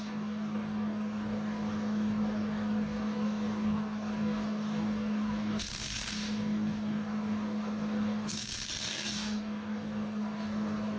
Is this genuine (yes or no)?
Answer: no